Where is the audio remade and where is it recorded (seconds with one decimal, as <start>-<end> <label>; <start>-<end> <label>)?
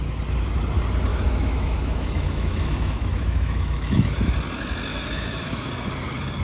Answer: 0.0-1.1 recorded; 1.1-4.3 remade; 4.3-4.9 recorded; 4.9-5.7 remade; 5.7-6.4 recorded